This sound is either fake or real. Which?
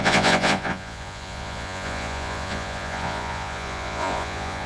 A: fake